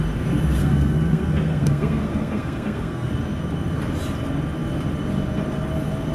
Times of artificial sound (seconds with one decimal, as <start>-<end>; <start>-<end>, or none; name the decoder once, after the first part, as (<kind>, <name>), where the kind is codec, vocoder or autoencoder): 0.6-3.1 (codec, SNAC)